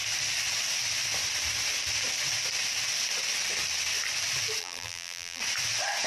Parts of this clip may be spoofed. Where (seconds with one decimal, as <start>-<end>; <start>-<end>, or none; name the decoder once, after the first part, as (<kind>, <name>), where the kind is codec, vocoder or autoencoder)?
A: 4.6-5.4 (vocoder, BigVGAN v2)